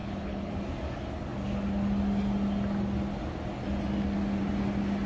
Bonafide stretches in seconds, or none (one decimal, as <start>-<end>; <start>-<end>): 0.5-5.1